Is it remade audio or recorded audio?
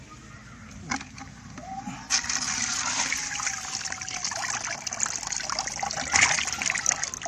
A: recorded